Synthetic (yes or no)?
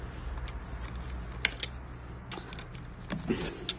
no